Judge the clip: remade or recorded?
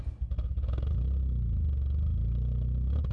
recorded